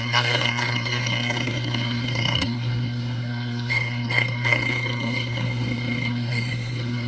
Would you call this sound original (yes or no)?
no